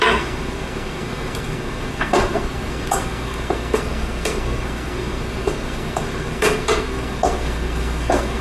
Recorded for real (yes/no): no